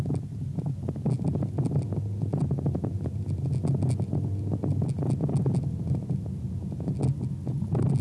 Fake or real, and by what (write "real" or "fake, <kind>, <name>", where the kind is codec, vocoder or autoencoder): real